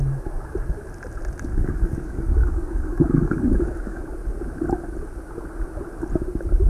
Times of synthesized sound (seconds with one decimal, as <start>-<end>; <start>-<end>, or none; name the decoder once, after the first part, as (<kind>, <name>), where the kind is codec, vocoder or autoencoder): 1.5-4.0 (codec, DAC)